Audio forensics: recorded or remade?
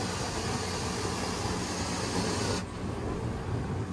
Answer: recorded